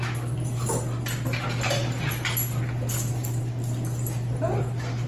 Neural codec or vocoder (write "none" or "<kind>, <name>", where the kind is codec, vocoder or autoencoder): none